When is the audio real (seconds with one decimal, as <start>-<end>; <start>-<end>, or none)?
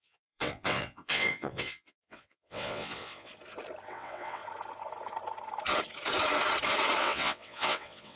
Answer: 3.3-3.9; 4.4-7.0